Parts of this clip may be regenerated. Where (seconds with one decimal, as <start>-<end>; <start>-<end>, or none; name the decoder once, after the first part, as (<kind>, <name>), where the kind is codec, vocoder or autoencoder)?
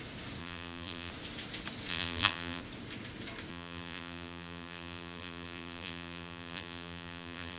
0.4-1.1 (vocoder, BigVGAN v2); 1.9-2.6; 3.5-7.6